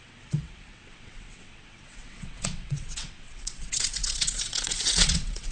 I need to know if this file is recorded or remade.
remade